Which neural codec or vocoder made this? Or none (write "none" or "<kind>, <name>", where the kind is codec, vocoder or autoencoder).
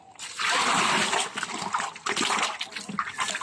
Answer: none